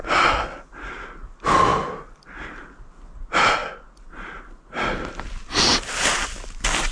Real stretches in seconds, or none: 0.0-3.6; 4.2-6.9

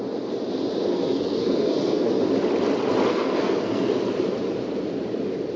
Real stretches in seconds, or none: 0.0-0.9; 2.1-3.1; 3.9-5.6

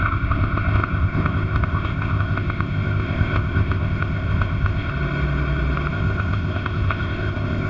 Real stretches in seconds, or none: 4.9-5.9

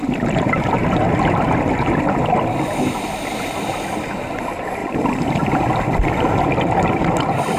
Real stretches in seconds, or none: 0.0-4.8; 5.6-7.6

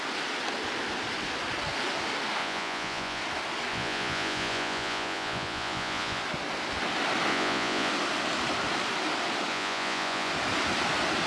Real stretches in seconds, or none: 0.0-2.4; 3.2-3.7; 6.2-7.3; 7.9-9.5; 10.3-11.3